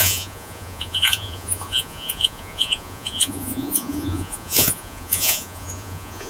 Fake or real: fake